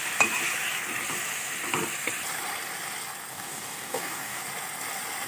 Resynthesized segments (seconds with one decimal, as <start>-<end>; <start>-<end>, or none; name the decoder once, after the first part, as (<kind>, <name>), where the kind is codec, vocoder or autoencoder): 3.3-4.4 (codec, DAC)

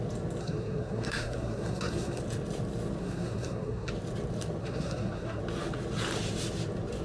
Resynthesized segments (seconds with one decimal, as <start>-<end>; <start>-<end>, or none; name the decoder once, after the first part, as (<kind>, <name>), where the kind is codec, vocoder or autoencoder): 0.4-2.2 (codec, SNAC); 3.0-3.9; 4.6-5.4

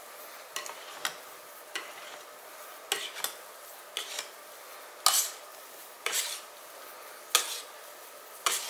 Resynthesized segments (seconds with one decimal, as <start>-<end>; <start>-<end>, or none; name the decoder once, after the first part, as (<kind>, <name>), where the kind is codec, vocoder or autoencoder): 5.5-6.2 (vocoder, BigVGAN v2)

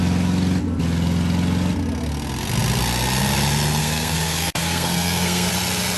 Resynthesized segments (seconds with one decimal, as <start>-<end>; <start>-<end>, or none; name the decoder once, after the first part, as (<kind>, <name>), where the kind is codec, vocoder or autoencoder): 3.8-5.5 (codec, SNAC)